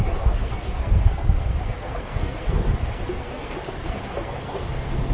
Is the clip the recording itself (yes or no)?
no